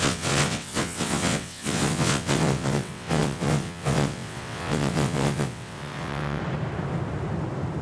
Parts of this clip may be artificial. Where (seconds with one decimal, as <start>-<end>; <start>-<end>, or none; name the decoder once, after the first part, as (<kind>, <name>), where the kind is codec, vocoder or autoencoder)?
0.0-6.4 (vocoder, WaveNeXt)